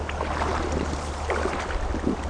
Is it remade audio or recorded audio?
recorded